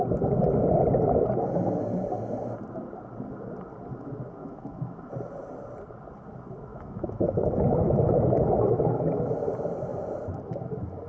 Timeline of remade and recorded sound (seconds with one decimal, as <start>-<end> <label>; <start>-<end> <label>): 0.0-4.4 recorded; 4.4-5.1 remade; 5.1-6.7 recorded; 6.7-9.3 remade; 9.3-11.1 recorded